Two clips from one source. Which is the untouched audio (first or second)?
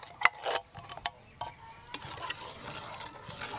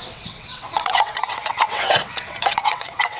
first